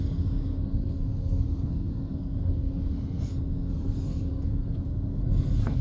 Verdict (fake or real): fake